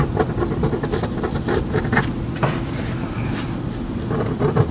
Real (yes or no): yes